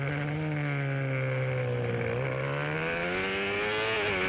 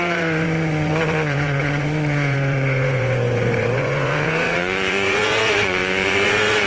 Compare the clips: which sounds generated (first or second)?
second